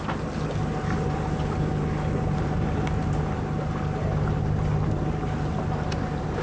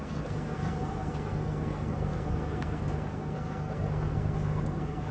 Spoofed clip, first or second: second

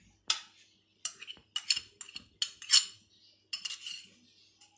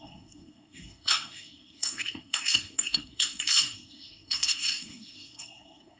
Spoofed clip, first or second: second